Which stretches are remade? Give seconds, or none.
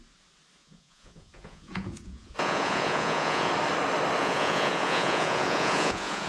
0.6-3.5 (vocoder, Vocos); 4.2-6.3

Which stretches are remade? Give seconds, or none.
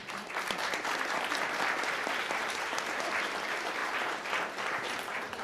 2.4-3.1 (vocoder, BigVGAN v2); 3.8-5.4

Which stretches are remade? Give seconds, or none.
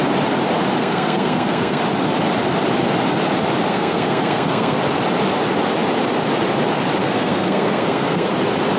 0.8-1.8 (codec, SNAC); 3.7-4.8; 7.0-8.3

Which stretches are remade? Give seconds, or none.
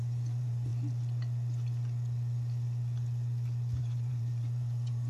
0.0-0.7 (vocoder, BigVGAN v2); 3.8-5.1